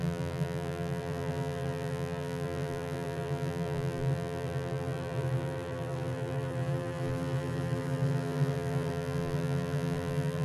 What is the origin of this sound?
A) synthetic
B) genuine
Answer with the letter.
A